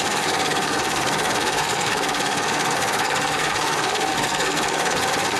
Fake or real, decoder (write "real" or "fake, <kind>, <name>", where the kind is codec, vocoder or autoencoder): fake, codec, SNAC